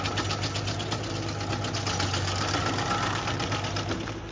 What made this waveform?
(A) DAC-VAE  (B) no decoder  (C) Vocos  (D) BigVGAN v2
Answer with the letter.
B